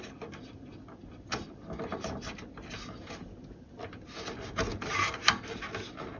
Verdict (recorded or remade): recorded